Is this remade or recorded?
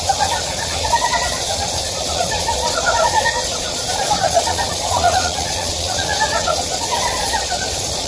remade